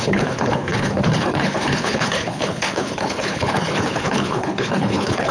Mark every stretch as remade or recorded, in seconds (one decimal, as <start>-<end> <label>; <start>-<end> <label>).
0.0-5.3 remade